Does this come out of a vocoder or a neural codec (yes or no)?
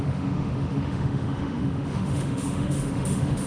yes